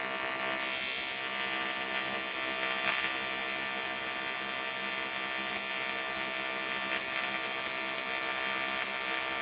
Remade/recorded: recorded